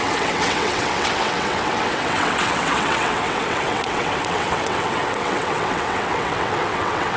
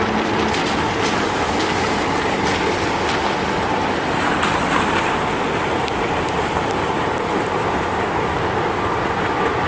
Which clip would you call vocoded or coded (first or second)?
first